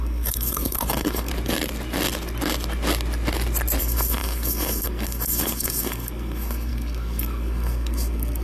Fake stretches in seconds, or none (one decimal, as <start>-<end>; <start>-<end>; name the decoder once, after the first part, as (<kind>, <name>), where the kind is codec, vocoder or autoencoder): 0.0-1.3 (codec, SNAC); 3.8-8.4